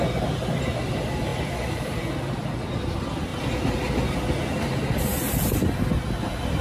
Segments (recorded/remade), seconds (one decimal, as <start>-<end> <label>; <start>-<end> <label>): 0.0-1.3 recorded; 1.3-2.0 remade; 2.0-6.6 recorded